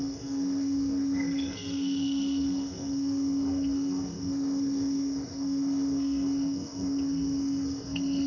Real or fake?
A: fake